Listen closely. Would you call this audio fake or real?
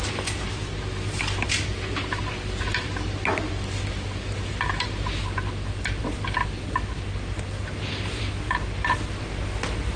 real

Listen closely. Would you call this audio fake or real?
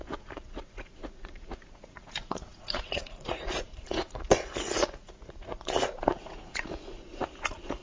fake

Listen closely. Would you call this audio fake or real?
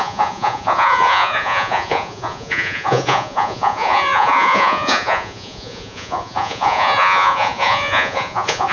fake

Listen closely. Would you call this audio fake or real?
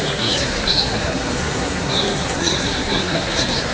fake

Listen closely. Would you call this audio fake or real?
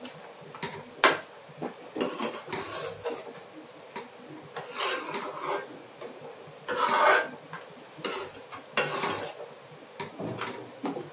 real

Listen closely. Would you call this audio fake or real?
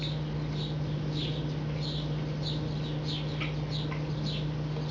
real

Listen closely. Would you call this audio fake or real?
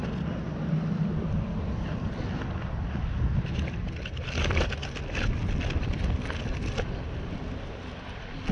real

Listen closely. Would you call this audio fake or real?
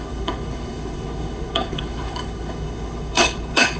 fake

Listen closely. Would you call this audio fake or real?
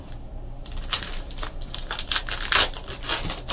real